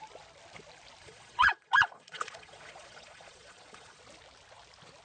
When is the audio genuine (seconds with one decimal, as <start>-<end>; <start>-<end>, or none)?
0.0-1.0; 4.0-5.0